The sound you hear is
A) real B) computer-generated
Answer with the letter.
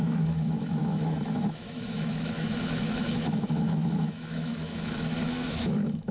B